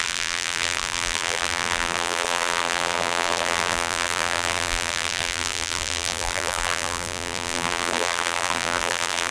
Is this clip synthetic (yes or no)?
yes